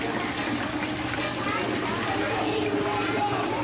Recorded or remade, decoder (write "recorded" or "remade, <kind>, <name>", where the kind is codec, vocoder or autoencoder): recorded